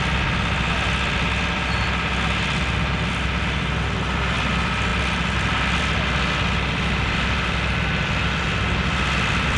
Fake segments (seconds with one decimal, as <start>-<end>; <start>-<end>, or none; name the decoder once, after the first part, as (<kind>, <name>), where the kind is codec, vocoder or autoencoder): none